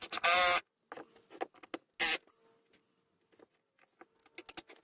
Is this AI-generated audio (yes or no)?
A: no